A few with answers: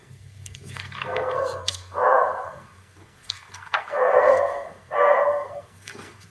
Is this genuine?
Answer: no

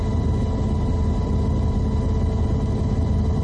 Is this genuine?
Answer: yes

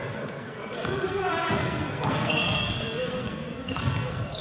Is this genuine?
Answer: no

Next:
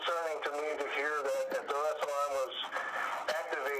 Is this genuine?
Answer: yes